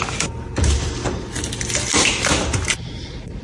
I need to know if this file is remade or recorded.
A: recorded